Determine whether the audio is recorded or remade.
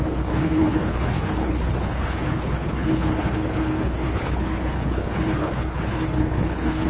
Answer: remade